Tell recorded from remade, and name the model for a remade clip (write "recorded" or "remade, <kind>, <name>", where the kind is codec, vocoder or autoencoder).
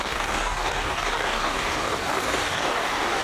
remade, codec, DAC